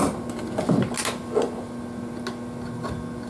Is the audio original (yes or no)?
yes